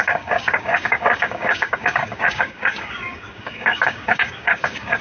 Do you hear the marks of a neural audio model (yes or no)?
yes